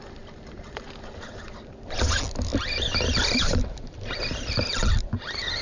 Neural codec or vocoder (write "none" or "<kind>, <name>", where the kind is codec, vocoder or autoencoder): none